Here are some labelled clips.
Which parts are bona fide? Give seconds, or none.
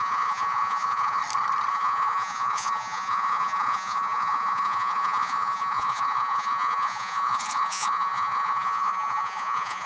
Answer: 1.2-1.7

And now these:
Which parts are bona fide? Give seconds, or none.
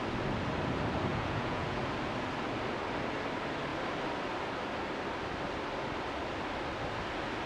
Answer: 0.0-1.1; 1.8-7.5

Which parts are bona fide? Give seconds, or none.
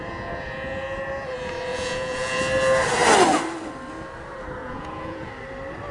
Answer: 0.0-1.7; 2.4-4.6; 5.3-5.9